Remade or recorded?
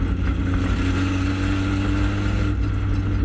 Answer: recorded